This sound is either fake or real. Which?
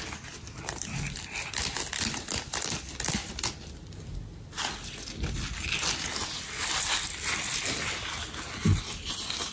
real